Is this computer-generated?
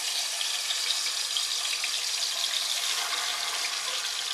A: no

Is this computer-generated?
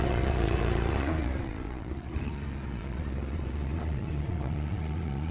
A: yes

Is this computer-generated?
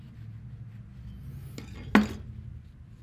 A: no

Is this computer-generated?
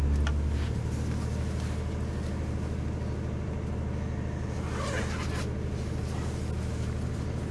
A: no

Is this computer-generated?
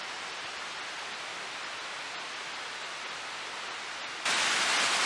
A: no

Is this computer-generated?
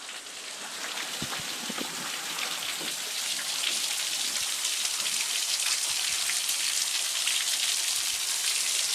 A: no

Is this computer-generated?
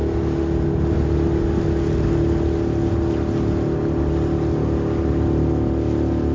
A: no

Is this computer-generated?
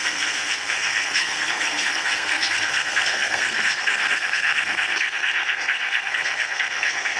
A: yes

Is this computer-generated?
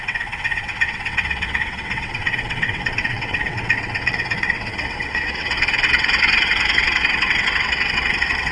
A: yes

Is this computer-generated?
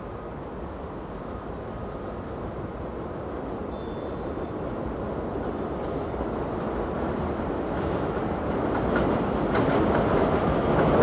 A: no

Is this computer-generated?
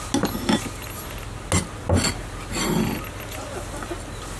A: no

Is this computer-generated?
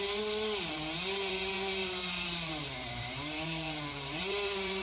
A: yes